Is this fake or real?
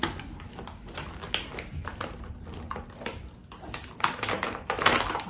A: fake